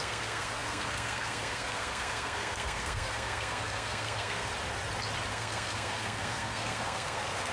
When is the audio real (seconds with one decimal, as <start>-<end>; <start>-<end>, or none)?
4.5-5.3